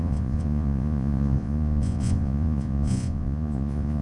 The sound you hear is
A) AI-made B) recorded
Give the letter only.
A